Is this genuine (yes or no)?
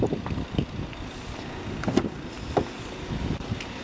yes